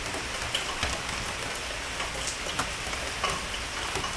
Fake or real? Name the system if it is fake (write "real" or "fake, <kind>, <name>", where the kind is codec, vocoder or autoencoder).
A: real